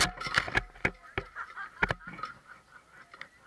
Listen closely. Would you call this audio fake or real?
real